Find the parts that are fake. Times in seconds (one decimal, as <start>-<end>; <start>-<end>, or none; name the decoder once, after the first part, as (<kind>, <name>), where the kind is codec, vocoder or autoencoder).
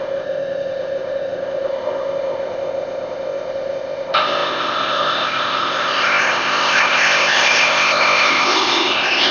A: 0.0-9.3 (codec, ZipCodec)